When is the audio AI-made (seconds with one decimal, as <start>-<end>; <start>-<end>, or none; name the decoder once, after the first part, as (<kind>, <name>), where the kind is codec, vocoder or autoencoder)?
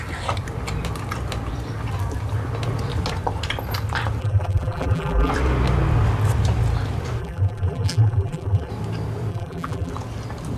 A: 4.2-5.3 (vocoder, BigVGAN v2); 7.2-8.7; 9.3-9.9